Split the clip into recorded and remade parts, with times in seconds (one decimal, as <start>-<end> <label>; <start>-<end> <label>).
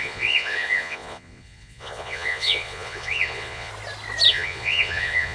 0.0-3.7 remade; 3.7-4.3 recorded; 4.3-5.3 remade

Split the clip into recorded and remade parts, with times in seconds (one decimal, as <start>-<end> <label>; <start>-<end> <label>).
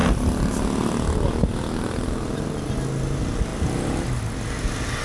0.0-5.0 recorded